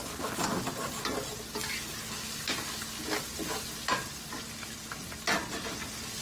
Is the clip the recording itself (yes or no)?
yes